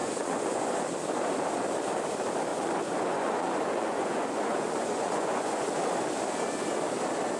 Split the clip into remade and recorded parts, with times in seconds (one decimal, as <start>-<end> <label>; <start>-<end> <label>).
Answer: 0.0-0.9 remade; 0.9-2.5 recorded; 2.5-5.8 remade; 5.8-7.4 recorded